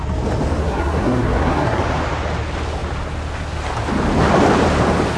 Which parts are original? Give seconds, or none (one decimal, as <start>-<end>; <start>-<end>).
0.0-0.6; 1.8-5.2

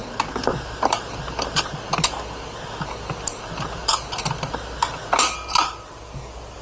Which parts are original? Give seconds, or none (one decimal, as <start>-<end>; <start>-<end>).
0.0-6.6

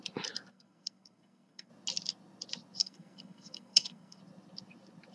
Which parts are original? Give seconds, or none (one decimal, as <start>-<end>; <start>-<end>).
0.0-0.5; 1.7-2.8; 4.2-5.1

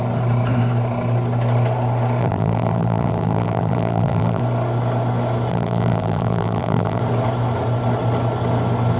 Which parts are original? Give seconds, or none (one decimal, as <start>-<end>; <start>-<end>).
0.0-2.2; 4.4-5.5; 7.0-9.0

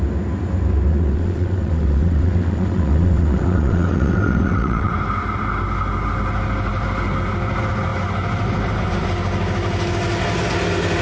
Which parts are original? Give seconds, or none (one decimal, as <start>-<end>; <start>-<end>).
0.0-0.9; 4.9-11.0

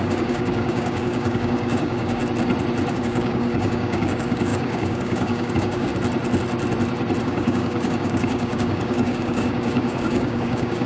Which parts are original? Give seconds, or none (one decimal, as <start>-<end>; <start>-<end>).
2.2-2.9; 5.9-7.2

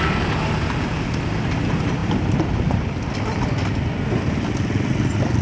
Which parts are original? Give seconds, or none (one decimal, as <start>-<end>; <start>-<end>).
0.0-5.4